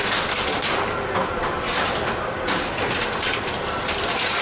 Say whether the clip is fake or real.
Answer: real